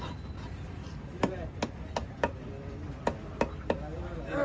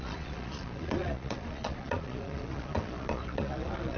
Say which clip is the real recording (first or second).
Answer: first